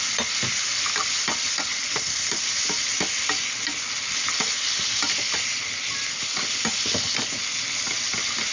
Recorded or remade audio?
recorded